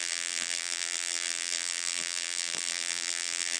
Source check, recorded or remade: remade